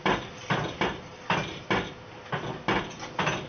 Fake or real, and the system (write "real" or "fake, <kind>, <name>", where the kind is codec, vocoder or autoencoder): real